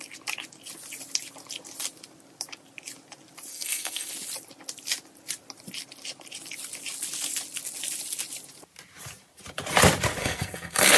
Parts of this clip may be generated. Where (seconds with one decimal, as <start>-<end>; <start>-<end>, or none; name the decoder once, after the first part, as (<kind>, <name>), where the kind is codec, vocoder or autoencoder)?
3.5-4.1 (codec, SNAC); 10.2-11.0